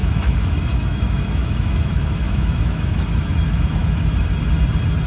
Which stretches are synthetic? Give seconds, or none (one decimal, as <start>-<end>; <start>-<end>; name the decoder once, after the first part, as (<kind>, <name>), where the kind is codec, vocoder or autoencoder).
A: 0.0-3.8 (autoencoder, DAC-VAE)